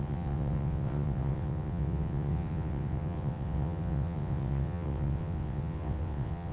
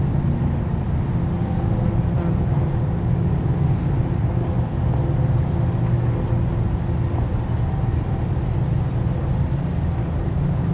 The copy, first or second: first